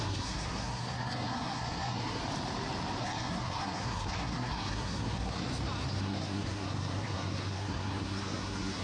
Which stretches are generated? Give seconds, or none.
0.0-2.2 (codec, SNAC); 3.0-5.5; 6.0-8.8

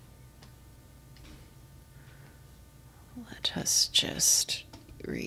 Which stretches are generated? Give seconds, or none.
none

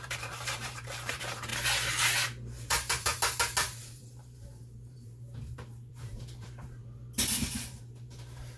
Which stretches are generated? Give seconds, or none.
0.0-1.5 (vocoder, BigVGAN v2); 2.7-3.1; 3.8-6.8; 7.4-8.6

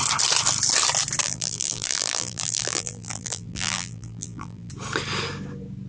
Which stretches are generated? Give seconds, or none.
1.2-4.7 (vocoder, BigVGAN v2)

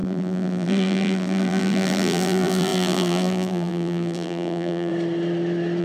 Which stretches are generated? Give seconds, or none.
0.0-4.9 (vocoder, BigVGAN v2)

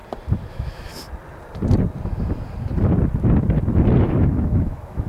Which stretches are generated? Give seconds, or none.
0.5-0.9 (autoencoder, DAC-VAE); 4.0-5.1

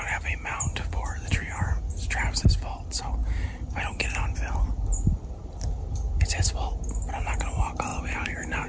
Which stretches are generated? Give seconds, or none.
none

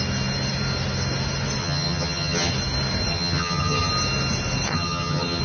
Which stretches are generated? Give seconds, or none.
1.6-2.5 (vocoder, HiFi-GAN); 3.1-3.9; 4.7-5.4